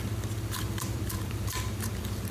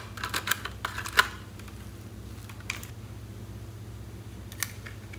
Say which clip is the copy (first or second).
first